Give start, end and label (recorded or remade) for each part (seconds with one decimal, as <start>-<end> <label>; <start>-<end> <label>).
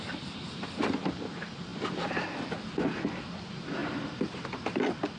0.0-1.7 recorded; 1.7-2.3 remade; 2.3-3.8 recorded; 3.8-4.7 remade; 4.7-5.2 recorded